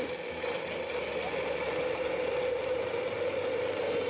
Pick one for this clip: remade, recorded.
recorded